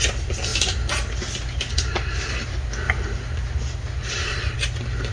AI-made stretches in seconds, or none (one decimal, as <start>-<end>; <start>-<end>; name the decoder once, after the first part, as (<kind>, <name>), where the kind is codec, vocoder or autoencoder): none